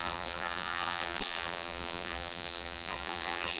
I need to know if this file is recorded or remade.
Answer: remade